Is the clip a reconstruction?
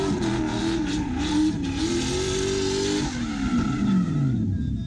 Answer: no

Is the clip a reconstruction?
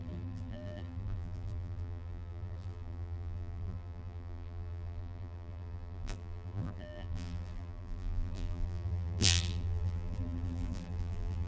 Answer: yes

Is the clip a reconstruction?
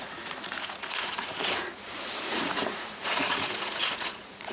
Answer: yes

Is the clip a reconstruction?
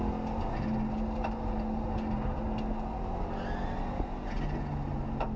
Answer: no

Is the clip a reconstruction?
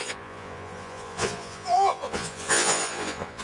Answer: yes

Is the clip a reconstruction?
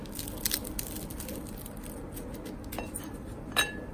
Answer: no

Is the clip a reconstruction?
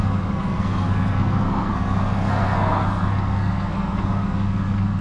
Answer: yes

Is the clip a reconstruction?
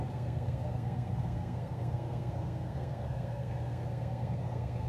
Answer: yes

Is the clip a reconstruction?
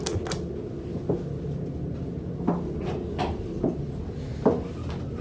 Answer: no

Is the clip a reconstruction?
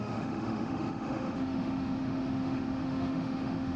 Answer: yes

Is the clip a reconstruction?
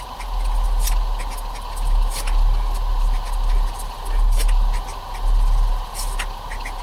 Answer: no